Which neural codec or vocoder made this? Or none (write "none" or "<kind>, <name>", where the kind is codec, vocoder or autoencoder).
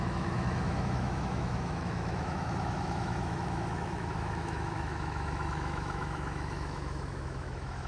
autoencoder, DAC-VAE